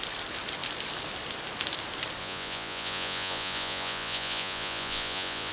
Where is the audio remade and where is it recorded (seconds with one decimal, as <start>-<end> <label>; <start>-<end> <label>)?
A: 0.0-2.2 recorded; 2.2-5.5 remade